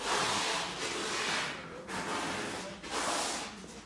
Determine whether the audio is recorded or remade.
recorded